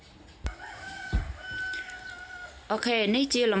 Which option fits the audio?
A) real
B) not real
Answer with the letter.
A